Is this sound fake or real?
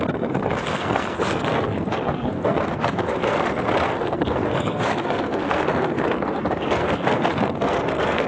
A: fake